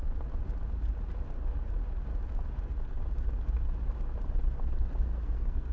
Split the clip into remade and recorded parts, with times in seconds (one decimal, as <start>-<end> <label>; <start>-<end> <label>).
0.0-5.0 recorded; 5.0-5.7 remade